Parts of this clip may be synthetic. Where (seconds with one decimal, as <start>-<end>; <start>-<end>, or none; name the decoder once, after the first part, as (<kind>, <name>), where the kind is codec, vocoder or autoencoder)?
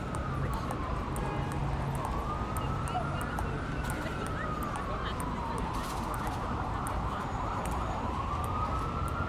7.3-8.3 (vocoder, BigVGAN v2)